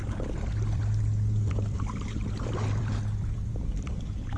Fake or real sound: fake